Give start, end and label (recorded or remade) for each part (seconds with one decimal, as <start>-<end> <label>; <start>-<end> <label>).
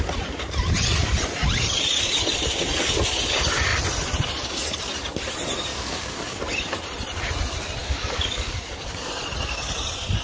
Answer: 0.0-5.7 recorded; 5.7-6.4 remade; 6.4-7.8 recorded; 7.8-9.1 remade; 9.1-10.2 recorded